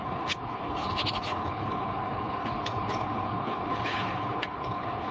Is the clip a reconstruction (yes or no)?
yes